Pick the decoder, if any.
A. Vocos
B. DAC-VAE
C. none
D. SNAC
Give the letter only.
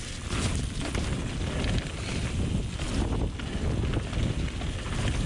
C